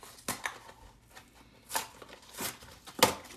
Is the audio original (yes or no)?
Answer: yes